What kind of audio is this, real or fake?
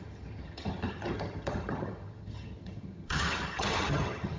fake